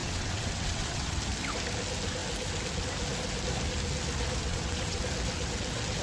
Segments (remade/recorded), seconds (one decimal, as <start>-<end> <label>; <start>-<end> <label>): 0.0-1.2 remade; 1.2-4.4 recorded; 4.4-5.0 remade; 5.0-6.0 recorded